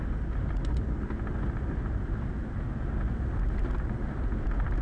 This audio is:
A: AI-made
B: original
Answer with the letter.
B